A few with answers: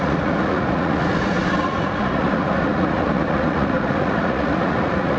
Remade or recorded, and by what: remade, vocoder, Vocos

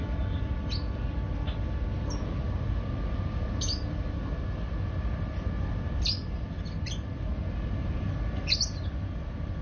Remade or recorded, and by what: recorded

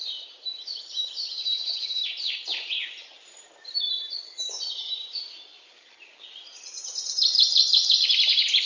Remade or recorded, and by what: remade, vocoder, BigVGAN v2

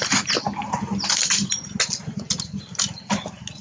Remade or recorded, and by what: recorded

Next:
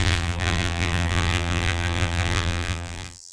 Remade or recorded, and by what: remade, vocoder, BigVGAN v2